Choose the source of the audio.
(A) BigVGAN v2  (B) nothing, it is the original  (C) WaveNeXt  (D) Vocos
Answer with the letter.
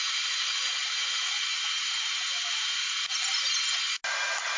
B